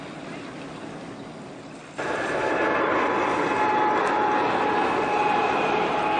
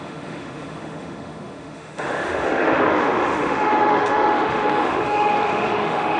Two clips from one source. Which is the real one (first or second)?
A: first